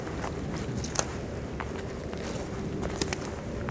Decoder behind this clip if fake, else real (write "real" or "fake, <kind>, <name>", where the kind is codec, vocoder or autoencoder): real